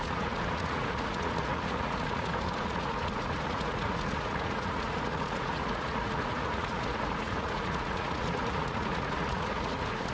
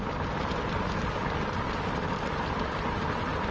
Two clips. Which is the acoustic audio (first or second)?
second